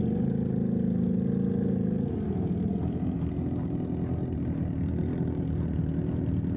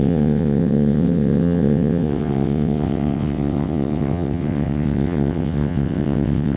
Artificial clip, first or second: second